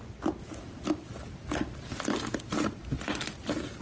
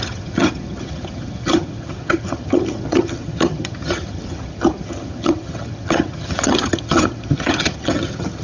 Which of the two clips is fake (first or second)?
second